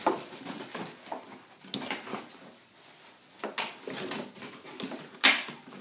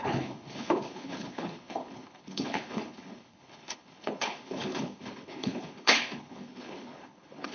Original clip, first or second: first